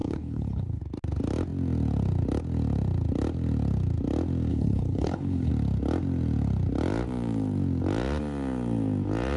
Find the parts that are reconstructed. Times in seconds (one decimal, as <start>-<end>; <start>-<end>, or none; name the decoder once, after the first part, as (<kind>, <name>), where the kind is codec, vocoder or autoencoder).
0.0-0.8 (codec, HILCodec); 4.5-5.5